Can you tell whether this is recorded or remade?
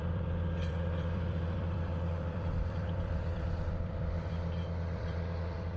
remade